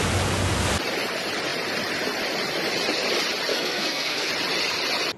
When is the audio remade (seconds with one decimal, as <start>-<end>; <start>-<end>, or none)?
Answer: 3.5-4.3